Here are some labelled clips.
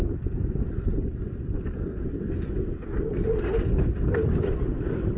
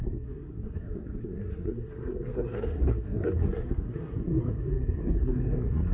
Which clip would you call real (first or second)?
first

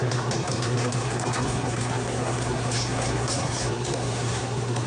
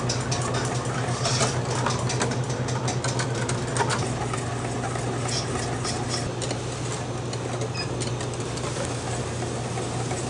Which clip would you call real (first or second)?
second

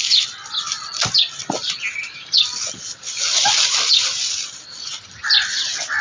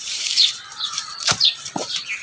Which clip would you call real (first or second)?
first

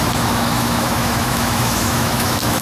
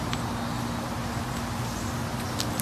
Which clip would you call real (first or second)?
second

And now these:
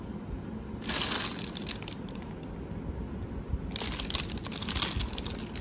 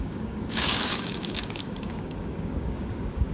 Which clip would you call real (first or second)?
first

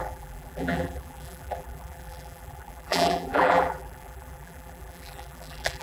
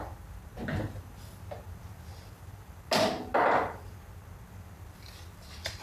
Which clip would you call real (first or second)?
second